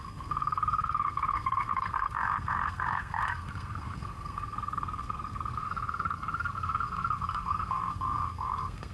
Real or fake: fake